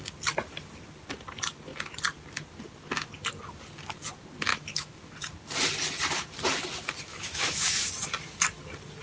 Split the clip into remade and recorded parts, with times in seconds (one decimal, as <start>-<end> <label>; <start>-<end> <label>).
0.0-4.5 recorded; 4.5-5.1 remade; 5.1-7.1 recorded; 7.1-7.9 remade; 7.9-9.0 recorded